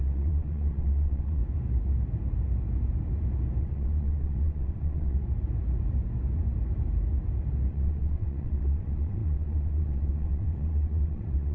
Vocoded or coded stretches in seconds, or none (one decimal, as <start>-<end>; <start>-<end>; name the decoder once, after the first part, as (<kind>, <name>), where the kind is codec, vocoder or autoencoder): 0.0-1.4 (vocoder, WaveNeXt); 3.6-5.2; 7.7-11.5